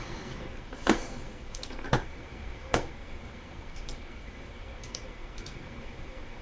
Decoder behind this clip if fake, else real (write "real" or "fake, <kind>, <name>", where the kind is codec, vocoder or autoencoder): fake, codec, SNAC